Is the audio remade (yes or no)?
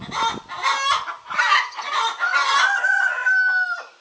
no